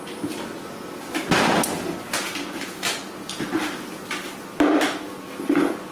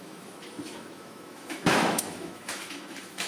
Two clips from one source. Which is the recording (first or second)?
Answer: first